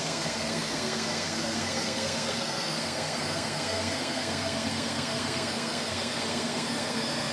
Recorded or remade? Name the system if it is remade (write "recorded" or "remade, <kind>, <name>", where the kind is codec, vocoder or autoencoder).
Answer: remade, codec, SNAC